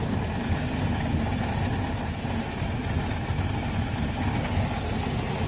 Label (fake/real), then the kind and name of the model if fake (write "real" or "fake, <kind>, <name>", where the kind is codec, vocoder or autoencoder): real